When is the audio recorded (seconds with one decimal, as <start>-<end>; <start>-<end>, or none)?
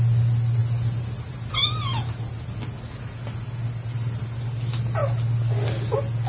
0.0-6.3